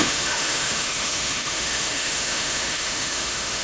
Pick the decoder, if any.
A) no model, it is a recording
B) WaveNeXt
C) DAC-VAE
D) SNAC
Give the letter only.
C